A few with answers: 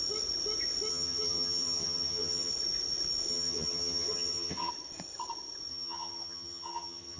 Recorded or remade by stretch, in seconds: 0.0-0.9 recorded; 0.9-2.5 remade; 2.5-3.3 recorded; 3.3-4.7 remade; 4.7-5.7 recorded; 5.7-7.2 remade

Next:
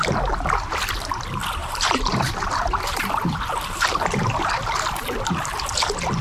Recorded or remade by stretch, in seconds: 0.0-1.6 recorded; 1.6-5.3 remade; 5.3-6.2 recorded

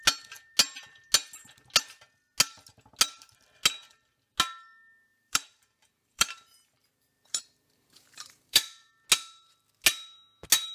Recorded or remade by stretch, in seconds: 0.0-5.1 recorded; 5.1-8.9 remade; 8.9-10.7 recorded

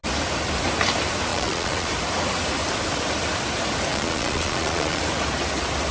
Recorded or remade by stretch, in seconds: 0.0-1.3 recorded; 1.3-1.9 remade; 1.9-3.9 recorded; 3.9-5.0 remade; 5.0-5.9 recorded

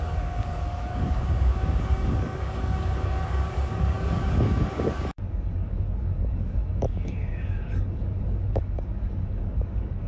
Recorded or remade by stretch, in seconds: 0.0-10.1 remade